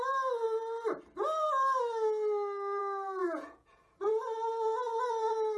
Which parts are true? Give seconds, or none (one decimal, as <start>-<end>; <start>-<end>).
0.0-3.2; 4.1-5.6